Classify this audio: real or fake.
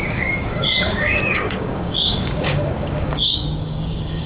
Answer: fake